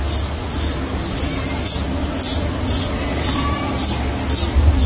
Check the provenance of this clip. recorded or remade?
recorded